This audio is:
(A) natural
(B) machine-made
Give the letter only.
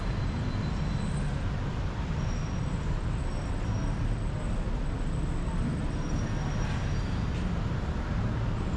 A